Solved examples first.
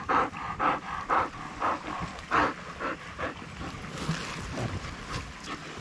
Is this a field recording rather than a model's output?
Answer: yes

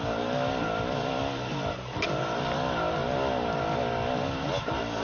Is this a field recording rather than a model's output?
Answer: yes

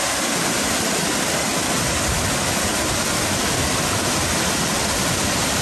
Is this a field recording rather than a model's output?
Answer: yes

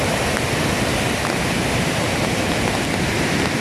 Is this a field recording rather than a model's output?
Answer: yes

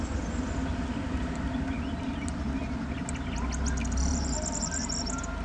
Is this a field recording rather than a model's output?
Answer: yes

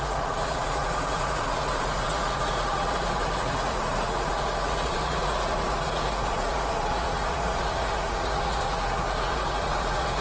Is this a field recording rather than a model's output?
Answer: no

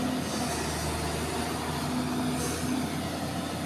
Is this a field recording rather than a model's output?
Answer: yes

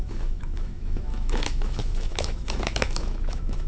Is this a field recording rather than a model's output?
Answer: no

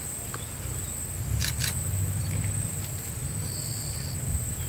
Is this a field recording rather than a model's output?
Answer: yes